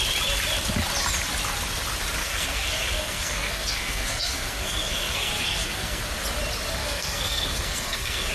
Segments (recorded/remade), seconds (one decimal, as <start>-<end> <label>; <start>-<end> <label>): 0.0-2.2 recorded; 2.2-6.0 remade; 6.0-6.8 recorded; 6.8-8.3 remade